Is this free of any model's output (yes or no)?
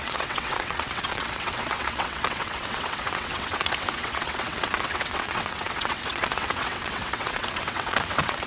no